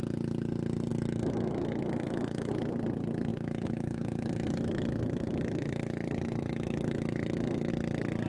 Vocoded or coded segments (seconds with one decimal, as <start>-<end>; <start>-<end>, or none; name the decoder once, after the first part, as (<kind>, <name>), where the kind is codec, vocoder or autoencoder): 0.9-2.5 (autoencoder, DAC-VAE); 3.3-7.7